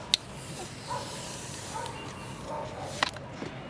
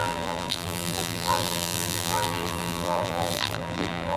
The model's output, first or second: second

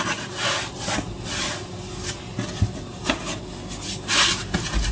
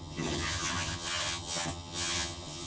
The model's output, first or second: second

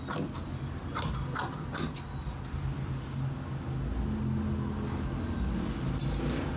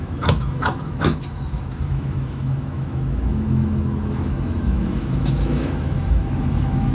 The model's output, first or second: second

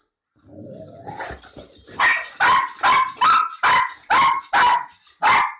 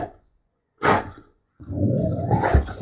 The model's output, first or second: second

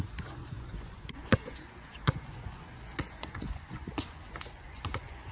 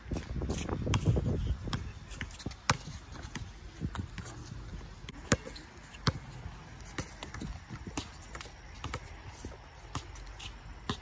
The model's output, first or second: first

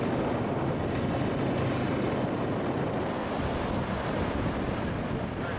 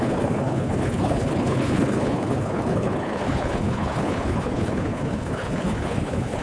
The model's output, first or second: second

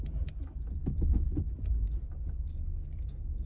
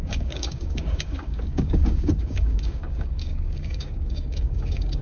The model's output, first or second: second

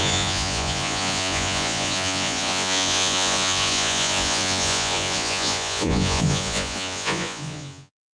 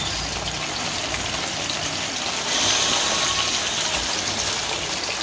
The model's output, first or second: first